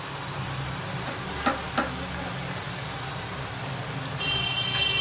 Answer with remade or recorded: recorded